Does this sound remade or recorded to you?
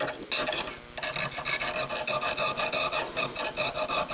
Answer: recorded